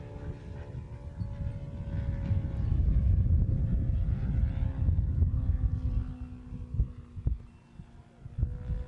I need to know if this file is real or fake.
real